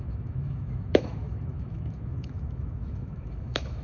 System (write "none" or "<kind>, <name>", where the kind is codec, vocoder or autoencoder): autoencoder, DAC-VAE